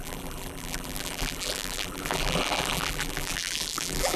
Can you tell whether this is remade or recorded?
remade